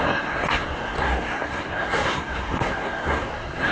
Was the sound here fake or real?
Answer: fake